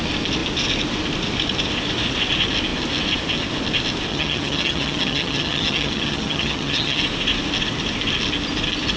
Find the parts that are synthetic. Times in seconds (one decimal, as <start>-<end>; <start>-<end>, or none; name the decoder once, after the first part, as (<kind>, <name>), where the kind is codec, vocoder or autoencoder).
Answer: 4.1-7.0 (vocoder, HiFi-GAN)